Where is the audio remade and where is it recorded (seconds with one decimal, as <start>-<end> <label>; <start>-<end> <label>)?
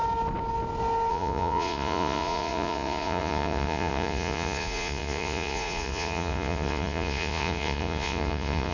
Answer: 0.0-1.1 recorded; 1.1-8.7 remade